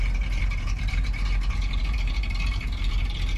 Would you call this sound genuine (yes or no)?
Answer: no